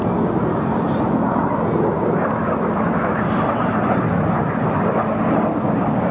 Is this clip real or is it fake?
real